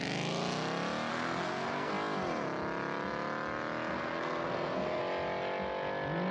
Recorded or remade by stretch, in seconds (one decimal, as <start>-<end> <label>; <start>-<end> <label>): 0.0-1.1 recorded; 1.1-1.9 remade; 1.9-3.9 recorded; 3.9-5.0 remade; 5.0-6.3 recorded